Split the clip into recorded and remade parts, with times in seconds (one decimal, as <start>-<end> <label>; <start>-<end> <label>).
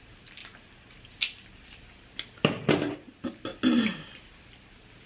0.0-5.1 recorded